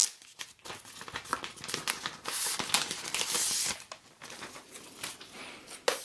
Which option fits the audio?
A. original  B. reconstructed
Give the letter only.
A